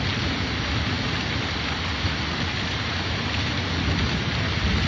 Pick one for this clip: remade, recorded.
recorded